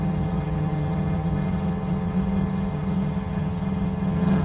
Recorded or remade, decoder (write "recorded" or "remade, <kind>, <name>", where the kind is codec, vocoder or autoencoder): remade, vocoder, HiFi-GAN